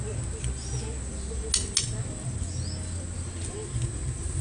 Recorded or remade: recorded